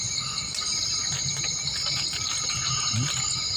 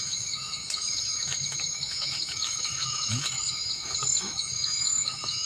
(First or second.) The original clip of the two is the first